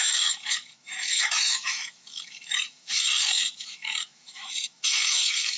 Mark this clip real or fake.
fake